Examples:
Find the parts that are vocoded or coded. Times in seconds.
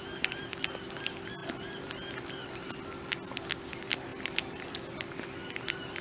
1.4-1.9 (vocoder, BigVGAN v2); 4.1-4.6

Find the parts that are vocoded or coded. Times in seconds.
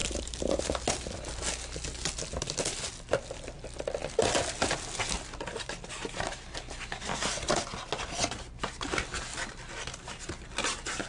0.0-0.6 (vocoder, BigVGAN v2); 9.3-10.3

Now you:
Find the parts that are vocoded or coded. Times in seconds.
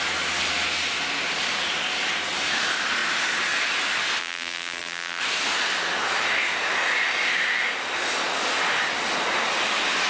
4.2-5.2 (vocoder, BigVGAN v2)